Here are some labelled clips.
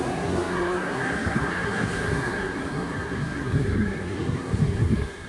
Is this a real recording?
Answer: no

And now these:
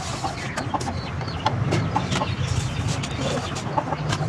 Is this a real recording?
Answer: yes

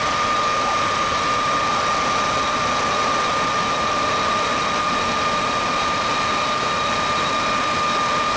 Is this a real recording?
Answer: yes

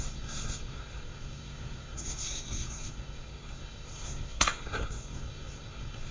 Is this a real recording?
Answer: no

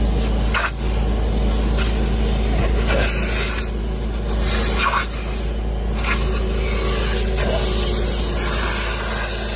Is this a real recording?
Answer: yes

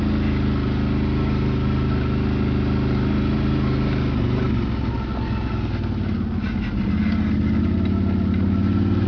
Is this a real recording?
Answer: yes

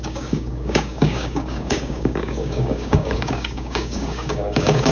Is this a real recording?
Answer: no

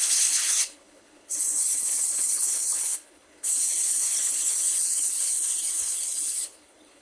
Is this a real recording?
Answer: no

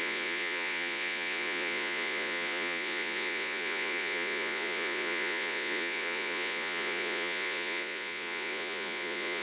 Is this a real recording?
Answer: no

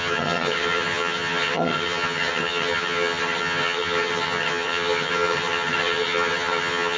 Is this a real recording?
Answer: no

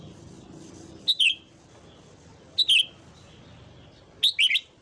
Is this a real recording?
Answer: yes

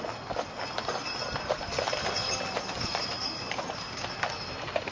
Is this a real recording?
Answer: yes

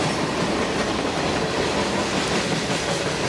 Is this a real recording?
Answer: yes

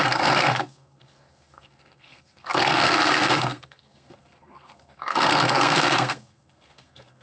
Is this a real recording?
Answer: no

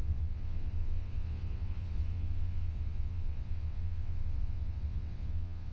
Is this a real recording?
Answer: no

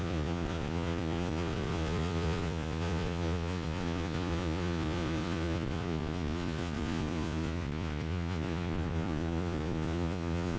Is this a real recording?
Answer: no